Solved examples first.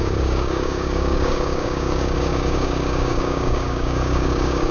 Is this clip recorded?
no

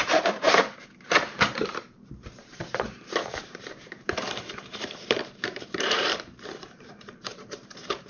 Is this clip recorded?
no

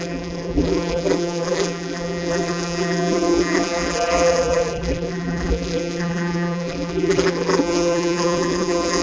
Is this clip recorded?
no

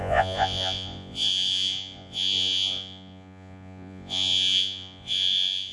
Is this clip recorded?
no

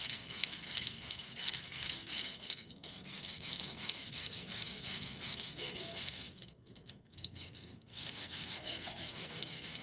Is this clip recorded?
no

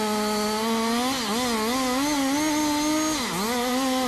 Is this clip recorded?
yes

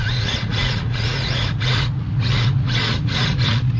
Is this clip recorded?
no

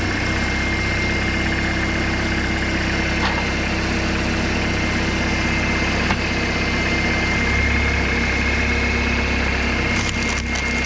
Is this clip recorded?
yes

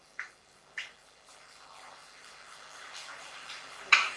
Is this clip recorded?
no